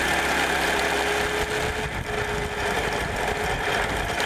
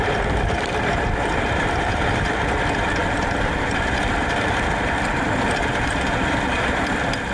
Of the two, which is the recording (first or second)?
first